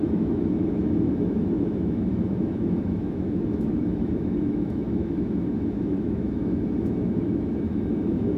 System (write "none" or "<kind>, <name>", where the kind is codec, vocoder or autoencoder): autoencoder, DAC-VAE